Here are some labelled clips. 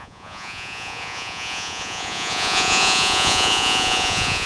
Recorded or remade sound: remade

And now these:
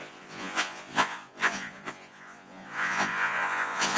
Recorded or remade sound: remade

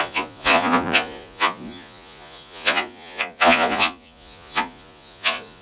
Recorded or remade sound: remade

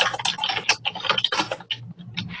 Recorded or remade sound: recorded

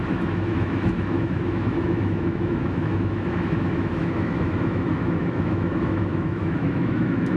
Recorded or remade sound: remade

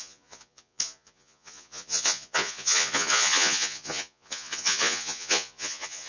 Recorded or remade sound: remade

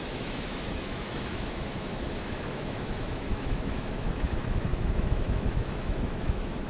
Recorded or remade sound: remade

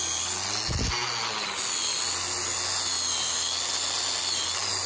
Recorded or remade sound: recorded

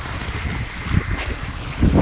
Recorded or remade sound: recorded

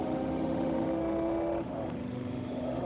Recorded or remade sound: remade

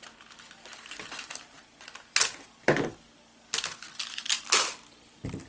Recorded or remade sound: recorded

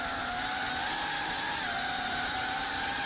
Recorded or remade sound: recorded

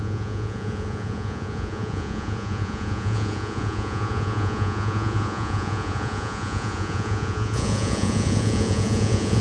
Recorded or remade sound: remade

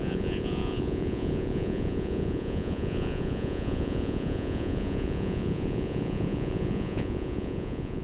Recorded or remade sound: remade